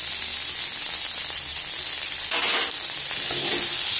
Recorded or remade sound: recorded